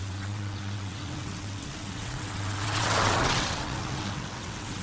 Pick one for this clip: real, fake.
fake